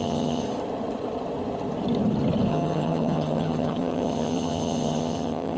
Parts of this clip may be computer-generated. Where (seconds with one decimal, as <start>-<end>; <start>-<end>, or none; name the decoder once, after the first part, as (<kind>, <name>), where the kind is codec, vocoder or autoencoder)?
0.0-0.4 (vocoder, HiFi-GAN); 2.5-5.6